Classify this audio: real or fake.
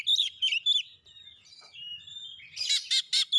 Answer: real